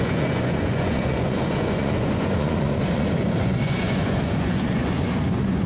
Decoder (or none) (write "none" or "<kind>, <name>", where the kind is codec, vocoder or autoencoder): vocoder, Vocos